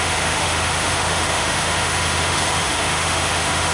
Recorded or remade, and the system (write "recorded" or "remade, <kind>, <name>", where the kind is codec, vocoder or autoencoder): remade, autoencoder, DAC-VAE